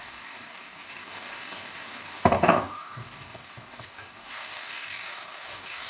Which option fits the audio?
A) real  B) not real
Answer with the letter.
B